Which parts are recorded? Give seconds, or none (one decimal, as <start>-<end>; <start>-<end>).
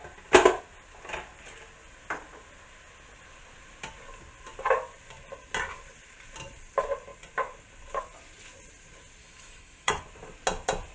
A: 0.0-9.2; 10.0-10.9